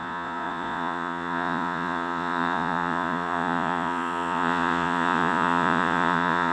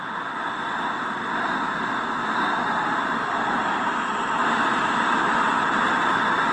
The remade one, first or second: first